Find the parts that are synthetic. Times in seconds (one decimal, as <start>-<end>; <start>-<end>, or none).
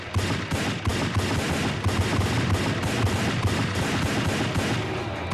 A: none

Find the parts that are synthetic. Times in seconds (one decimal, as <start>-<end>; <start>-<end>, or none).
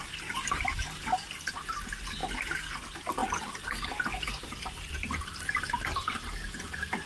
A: none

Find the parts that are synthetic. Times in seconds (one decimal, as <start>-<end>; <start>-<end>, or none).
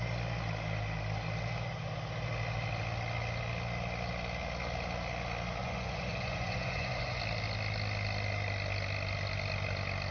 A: 5.6-7.2